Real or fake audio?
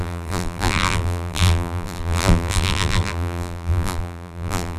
fake